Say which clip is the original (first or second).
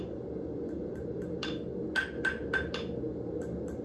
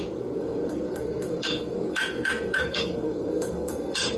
first